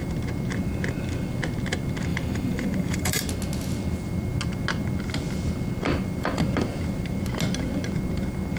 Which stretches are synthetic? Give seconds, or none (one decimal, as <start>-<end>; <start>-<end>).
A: 2.1-3.2